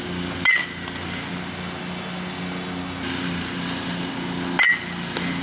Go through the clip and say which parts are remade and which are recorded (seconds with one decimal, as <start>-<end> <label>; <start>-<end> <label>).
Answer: 0.0-5.4 recorded